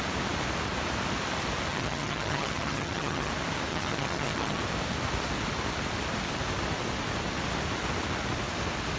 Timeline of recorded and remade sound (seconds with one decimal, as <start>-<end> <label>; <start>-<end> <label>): 0.0-1.7 recorded; 1.7-3.3 remade; 3.3-3.7 recorded; 3.7-4.6 remade; 4.6-9.0 recorded

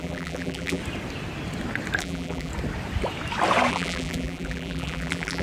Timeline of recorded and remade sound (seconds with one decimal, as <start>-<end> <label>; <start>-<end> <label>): 0.0-0.8 remade; 0.8-2.0 recorded; 2.0-2.5 remade; 2.5-3.7 recorded; 3.7-5.4 remade

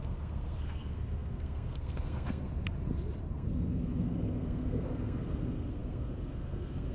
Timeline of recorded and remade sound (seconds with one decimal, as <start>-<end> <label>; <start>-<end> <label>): 0.0-2.5 remade; 2.5-3.3 recorded; 3.3-6.9 remade

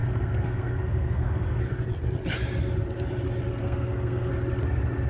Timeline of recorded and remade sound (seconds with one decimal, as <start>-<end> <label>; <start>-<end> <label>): 0.0-1.6 remade; 1.6-3.6 recorded; 3.6-4.3 remade; 4.3-5.1 recorded

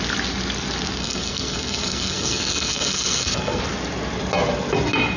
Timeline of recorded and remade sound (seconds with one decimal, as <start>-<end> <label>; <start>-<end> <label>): 0.0-1.0 recorded; 1.0-3.6 remade; 3.6-5.2 recorded

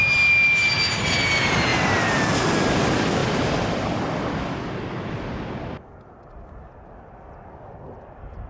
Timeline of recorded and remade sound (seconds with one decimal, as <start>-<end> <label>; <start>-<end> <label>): 0.0-1.7 recorded; 1.7-2.3 remade; 2.3-8.5 recorded